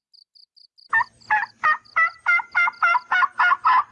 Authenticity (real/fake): real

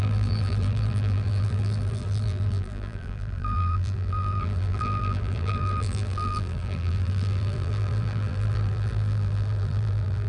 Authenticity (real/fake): fake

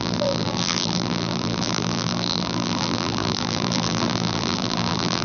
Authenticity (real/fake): fake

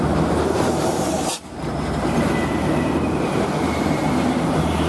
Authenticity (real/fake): fake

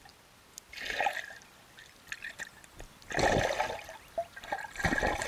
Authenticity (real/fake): real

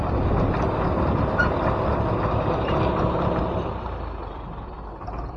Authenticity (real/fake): real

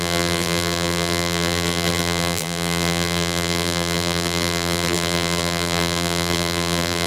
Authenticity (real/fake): fake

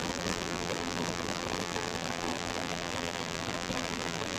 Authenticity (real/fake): fake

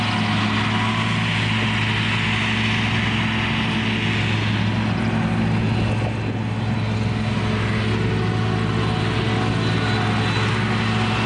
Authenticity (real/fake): real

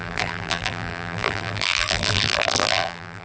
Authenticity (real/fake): fake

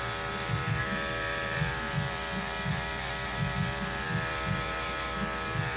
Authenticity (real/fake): fake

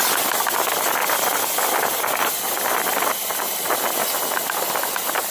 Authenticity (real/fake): real